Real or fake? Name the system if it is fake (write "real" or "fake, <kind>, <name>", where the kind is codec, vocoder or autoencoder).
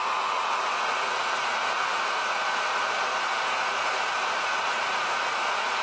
fake, vocoder, Vocos